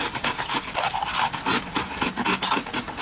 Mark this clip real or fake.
real